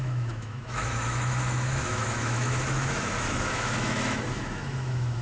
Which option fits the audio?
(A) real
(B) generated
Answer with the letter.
B